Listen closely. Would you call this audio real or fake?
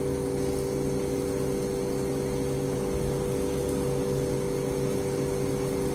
real